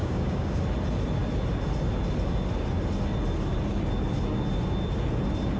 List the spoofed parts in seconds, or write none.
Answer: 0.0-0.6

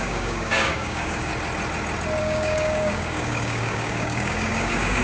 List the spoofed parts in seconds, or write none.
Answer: 0.0-1.3; 2.2-5.0

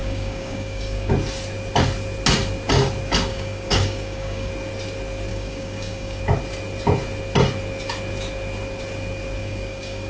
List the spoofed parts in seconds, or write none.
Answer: 0.0-1.1; 3.3-4.5; 5.3-6.2; 9.4-10.1

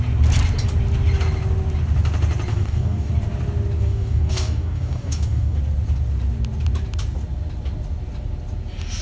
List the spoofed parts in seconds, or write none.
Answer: 2.5-3.1; 3.8-5.6

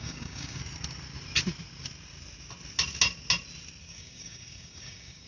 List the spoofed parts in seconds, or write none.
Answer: 0.0-0.6; 3.8-5.3

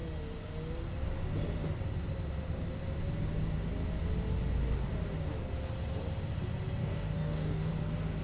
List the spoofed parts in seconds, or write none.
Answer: 6.8-7.7